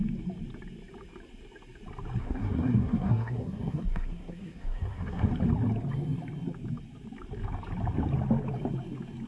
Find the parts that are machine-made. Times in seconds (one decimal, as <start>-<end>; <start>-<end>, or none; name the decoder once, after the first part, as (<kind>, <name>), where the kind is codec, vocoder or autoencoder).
2.2-5.3 (codec, SNAC)